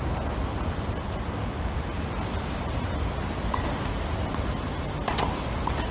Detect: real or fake real